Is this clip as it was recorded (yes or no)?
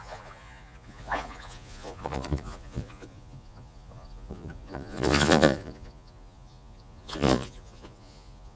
no